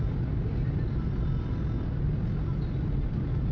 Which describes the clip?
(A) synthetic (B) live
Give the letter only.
B